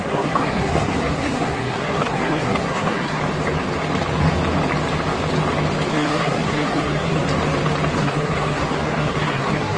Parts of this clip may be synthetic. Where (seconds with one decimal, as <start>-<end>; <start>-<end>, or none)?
0.0-3.2; 5.9-7.2; 8.0-9.8